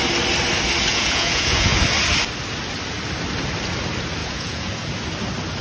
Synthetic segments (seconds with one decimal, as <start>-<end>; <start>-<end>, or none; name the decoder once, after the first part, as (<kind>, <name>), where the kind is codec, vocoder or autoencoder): 0.9-1.8 (vocoder, Vocos); 4.2-4.9